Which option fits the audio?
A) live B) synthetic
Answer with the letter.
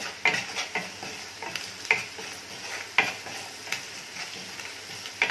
A